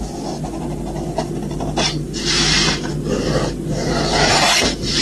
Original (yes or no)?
yes